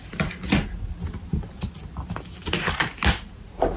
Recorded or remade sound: recorded